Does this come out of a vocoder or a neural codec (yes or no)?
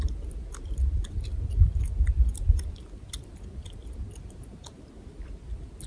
no